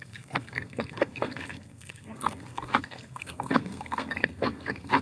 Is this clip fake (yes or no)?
yes